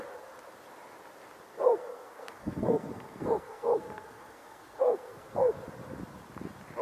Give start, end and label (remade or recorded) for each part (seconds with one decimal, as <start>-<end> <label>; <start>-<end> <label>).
0.0-1.5 recorded; 1.5-5.6 remade; 5.6-6.8 recorded